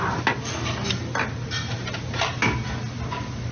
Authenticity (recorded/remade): recorded